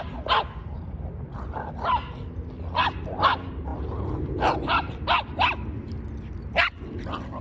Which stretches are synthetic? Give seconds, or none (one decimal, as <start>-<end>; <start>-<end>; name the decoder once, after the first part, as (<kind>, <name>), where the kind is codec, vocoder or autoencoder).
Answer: none